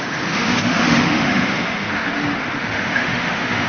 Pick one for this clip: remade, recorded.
remade